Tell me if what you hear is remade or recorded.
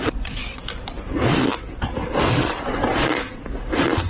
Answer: remade